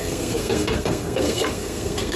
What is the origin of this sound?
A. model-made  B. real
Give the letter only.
A